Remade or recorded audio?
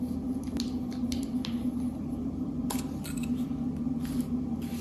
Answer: recorded